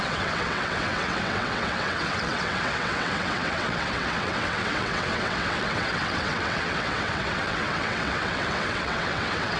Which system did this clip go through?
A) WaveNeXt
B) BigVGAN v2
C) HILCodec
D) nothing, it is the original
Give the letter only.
A